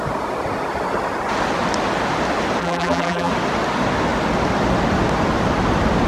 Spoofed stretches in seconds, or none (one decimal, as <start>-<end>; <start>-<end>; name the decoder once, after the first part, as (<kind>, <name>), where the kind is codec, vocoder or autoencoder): 2.6-3.3 (vocoder, BigVGAN v2)